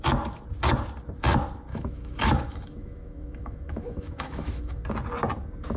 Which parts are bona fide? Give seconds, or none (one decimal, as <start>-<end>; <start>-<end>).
0.0-1.7; 4.8-5.8